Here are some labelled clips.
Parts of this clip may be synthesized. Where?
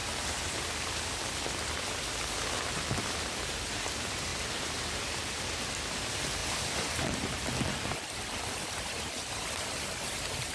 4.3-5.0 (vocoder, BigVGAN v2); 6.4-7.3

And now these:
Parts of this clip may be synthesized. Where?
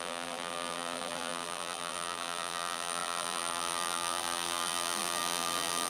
0.0-5.9 (vocoder, BigVGAN v2)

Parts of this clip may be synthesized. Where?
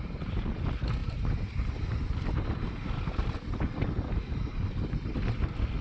1.0-3.3 (vocoder, BigVGAN v2)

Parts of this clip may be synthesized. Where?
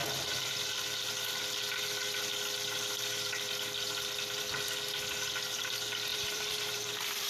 6.1-7.3 (vocoder, BigVGAN v2)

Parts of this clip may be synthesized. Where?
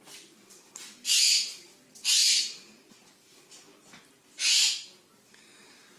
none